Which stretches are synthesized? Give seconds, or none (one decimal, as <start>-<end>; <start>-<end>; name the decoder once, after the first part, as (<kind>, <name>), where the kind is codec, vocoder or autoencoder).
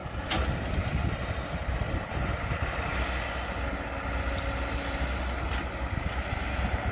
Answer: none